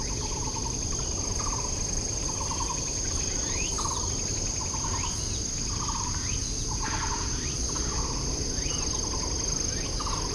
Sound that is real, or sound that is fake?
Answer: real